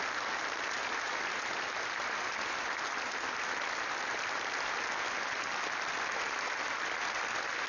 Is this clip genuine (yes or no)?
yes